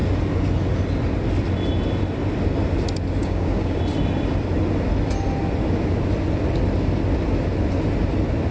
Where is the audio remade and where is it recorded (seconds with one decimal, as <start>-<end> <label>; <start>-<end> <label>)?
0.0-3.2 recorded; 3.2-3.8 remade; 3.8-8.5 recorded